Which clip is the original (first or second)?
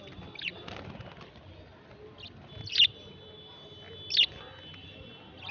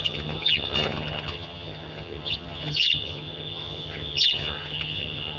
first